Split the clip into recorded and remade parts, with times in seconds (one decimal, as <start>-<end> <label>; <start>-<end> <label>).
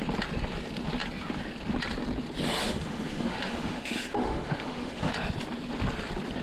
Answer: 0.0-2.6 recorded; 2.6-5.1 remade; 5.1-6.4 recorded